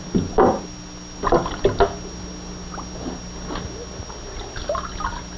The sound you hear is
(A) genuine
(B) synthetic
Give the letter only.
A